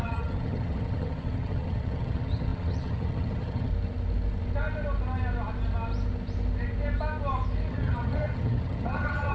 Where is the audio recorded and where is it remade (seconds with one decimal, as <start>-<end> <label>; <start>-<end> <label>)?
0.0-3.7 remade; 3.7-7.7 recorded; 7.7-9.3 remade